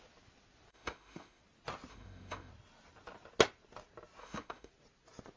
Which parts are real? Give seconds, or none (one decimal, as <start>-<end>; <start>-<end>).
0.0-0.7; 1.4-1.9; 2.5-4.2; 4.7-5.4